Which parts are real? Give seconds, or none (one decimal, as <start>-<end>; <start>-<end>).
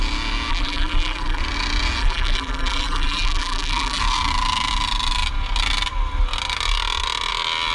0.0-0.5; 1.4-2.0; 4.0-7.7